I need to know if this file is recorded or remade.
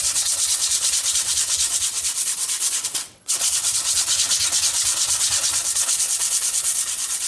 remade